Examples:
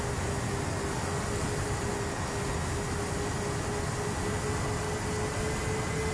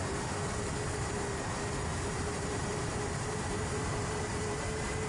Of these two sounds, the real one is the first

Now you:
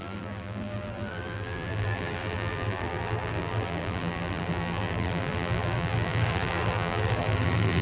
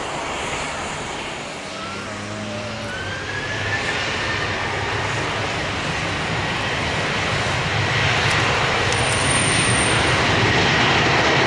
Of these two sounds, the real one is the second